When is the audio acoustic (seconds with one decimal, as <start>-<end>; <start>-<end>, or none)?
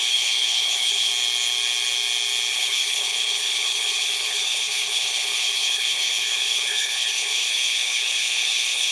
1.1-2.5